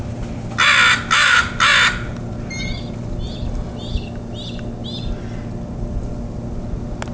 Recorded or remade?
recorded